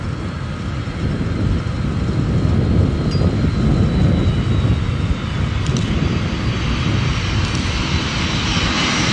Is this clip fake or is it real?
real